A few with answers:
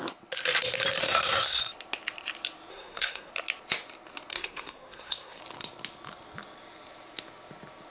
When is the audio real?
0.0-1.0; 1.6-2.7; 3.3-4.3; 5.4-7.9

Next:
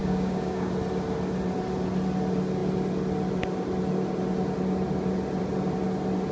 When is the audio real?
0.7-6.3

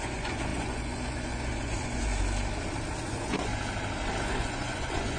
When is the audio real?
2.1-3.0; 3.5-4.2

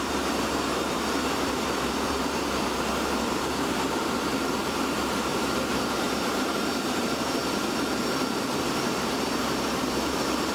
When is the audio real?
5.3-5.9

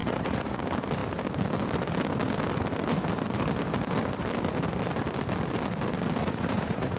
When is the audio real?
0.6-6.2

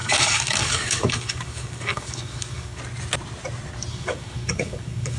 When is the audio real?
2.8-3.9

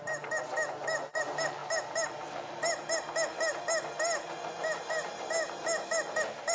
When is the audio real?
0.0-6.5

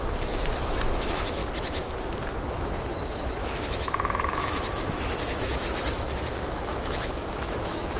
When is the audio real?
1.4-2.5